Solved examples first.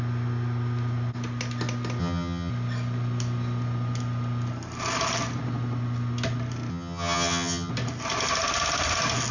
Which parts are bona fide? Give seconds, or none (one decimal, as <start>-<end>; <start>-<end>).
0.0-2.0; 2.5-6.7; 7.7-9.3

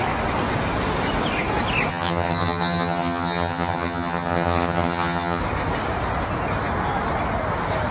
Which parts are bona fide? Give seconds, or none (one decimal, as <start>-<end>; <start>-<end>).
0.0-1.9; 5.4-7.9

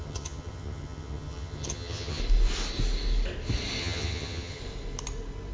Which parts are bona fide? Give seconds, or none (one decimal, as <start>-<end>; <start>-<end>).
2.2-3.8; 4.6-5.5

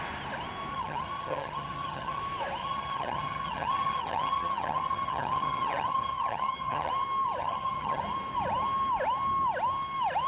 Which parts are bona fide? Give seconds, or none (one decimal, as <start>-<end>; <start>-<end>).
0.0-0.7; 2.2-2.6; 6.9-7.4; 8.0-10.3

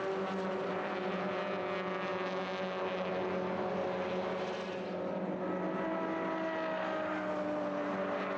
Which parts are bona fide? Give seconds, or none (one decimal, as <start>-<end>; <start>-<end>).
0.0-8.4

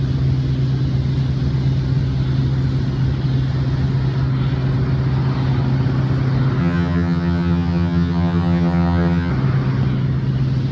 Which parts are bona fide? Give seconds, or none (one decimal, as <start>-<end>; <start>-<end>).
0.0-6.6; 9.3-10.7

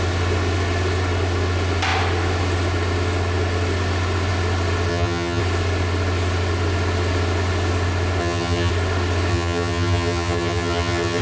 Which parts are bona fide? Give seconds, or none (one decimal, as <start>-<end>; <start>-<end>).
0.0-4.9; 5.4-8.2; 8.7-9.3

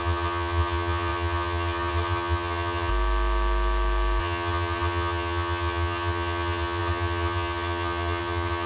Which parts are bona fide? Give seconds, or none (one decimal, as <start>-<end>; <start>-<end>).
2.9-4.2